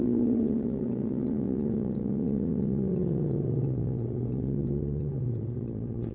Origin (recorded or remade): remade